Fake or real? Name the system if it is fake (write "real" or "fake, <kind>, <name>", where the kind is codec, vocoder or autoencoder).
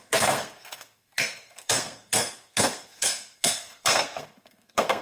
fake, codec, SNAC